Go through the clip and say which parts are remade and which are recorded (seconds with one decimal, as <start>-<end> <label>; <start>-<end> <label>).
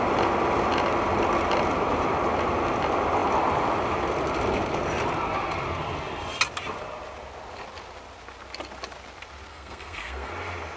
0.0-9.5 recorded; 9.5-10.3 remade; 10.3-10.8 recorded